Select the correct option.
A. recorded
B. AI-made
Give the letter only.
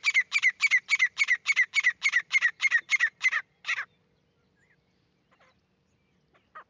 B